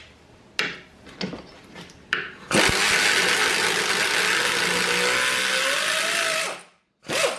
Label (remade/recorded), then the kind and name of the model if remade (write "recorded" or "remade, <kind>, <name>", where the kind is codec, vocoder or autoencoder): recorded